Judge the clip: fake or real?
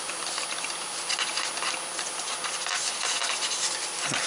real